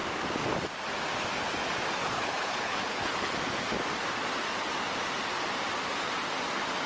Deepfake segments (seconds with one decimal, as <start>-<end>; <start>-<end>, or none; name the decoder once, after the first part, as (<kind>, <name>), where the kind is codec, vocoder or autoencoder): 2.0-3.3 (codec, HILCodec)